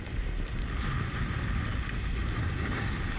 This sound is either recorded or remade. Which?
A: recorded